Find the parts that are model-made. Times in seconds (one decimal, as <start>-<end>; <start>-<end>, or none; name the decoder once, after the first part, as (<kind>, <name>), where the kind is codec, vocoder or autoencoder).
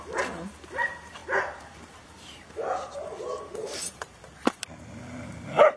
3.6-4.2 (vocoder, BigVGAN v2)